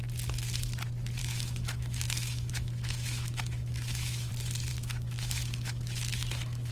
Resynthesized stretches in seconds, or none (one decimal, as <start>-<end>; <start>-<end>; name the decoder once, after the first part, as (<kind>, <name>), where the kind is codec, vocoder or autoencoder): 1.2-4.3 (autoencoder, DAC-VAE); 4.7-6.7